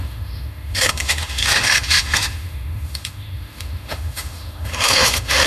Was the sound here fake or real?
fake